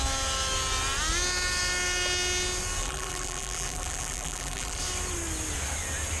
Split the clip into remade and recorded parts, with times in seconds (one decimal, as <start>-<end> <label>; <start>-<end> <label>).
0.0-2.8 recorded; 2.8-4.8 remade; 4.8-6.2 recorded